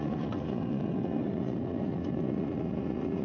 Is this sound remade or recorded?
remade